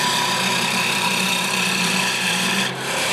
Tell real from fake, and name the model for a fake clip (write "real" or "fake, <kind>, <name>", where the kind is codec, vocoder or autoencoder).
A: fake, vocoder, BigVGAN v2